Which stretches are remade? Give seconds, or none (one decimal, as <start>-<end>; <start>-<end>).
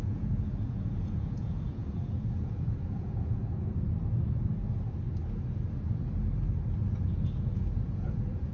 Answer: 0.0-3.7; 6.9-8.5